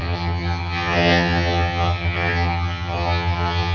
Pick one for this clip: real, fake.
fake